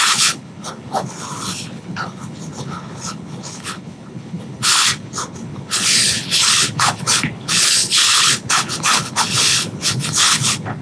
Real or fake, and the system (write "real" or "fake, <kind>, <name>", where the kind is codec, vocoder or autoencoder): fake, codec, HILCodec